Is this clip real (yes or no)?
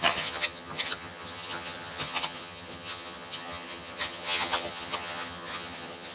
no